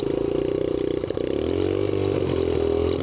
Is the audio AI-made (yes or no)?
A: no